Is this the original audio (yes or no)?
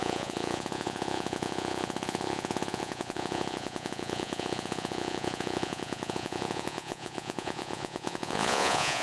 no